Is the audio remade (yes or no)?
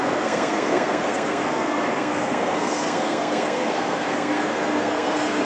yes